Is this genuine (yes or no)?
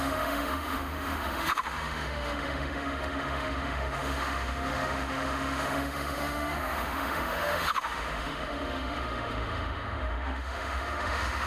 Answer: no